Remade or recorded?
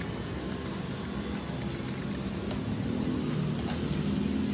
recorded